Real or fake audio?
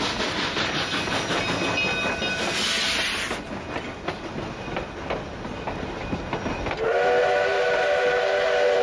real